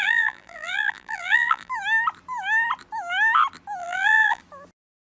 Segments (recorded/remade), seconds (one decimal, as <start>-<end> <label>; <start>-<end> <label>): 0.0-1.7 remade; 1.7-3.8 recorded; 3.8-4.4 remade; 4.4-5.0 recorded